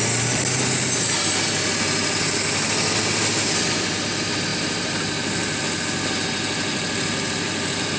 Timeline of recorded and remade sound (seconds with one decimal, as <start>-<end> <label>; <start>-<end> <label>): 0.0-8.0 recorded